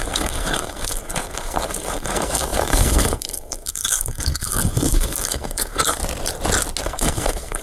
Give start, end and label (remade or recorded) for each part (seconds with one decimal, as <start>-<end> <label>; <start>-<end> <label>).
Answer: 0.0-6.0 remade; 6.0-6.8 recorded; 6.8-7.6 remade